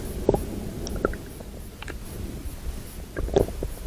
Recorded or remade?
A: recorded